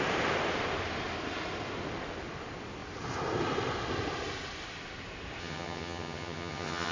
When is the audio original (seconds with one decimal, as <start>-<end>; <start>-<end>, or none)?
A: 0.0-5.4